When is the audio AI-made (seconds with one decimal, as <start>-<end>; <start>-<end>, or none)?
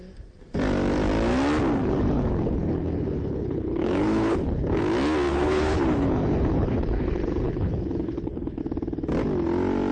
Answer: 1.8-4.8; 5.3-8.6